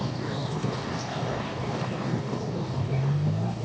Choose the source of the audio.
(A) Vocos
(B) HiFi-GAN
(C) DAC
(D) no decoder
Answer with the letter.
C